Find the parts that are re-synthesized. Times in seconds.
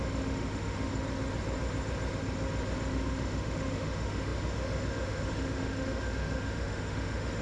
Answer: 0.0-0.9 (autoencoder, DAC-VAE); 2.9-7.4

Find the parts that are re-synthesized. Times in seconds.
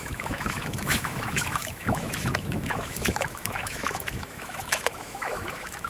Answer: 0.0-5.9 (autoencoder, DAC-VAE)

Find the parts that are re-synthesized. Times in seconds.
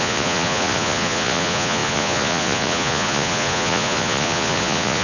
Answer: 0.0-5.0 (vocoder, Vocos)